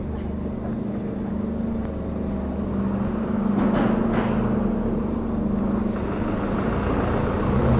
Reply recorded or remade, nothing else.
recorded